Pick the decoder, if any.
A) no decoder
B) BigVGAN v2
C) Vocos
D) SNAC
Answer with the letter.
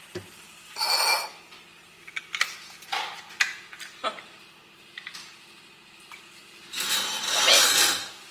A